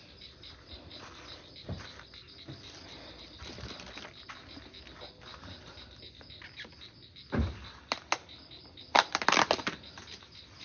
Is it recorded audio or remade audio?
recorded